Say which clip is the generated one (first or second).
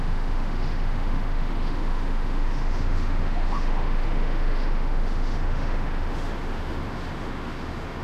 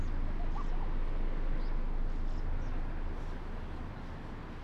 first